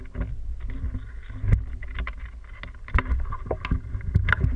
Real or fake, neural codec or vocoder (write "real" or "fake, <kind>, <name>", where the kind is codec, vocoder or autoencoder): real